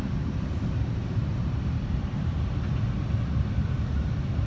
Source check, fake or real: fake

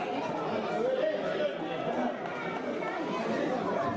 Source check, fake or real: real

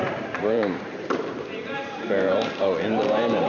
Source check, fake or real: fake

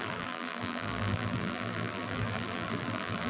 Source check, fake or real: fake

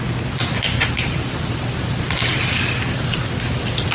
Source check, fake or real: real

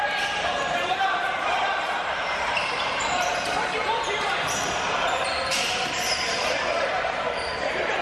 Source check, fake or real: fake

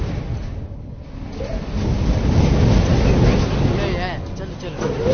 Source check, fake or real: real